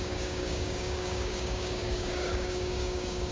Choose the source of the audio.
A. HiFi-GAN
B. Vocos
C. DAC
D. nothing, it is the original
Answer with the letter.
C